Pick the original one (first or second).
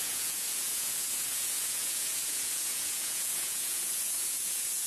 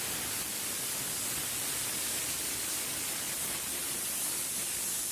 second